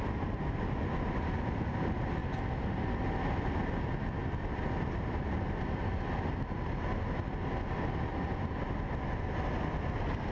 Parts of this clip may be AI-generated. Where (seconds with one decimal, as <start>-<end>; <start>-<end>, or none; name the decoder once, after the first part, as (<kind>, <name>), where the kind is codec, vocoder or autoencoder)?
none